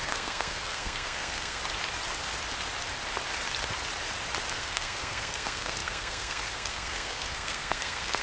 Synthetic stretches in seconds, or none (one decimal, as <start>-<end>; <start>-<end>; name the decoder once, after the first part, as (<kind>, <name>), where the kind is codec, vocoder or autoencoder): 0.0-1.6 (codec, SNAC); 4.5-8.2